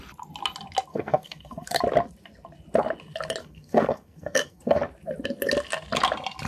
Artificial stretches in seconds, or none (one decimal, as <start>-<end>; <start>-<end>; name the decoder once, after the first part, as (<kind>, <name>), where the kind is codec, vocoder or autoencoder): 0.9-1.8 (codec, SNAC); 3.4-4.8